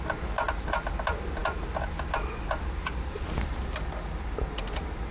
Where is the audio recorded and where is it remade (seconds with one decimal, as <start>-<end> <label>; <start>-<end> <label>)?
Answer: 0.0-5.1 recorded

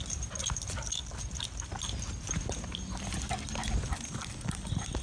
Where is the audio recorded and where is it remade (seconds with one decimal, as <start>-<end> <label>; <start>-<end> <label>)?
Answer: 0.0-5.0 recorded

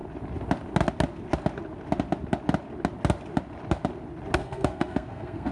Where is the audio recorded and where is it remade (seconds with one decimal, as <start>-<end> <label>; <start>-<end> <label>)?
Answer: 0.0-4.4 recorded; 4.4-5.5 remade

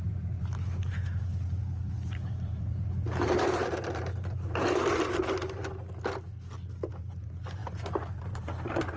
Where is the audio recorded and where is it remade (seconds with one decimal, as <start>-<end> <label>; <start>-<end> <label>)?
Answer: 0.0-5.6 remade; 5.6-6.9 recorded; 6.9-9.0 remade